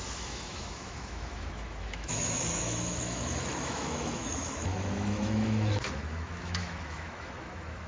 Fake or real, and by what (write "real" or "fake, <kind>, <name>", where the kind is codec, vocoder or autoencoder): fake, autoencoder, DAC-VAE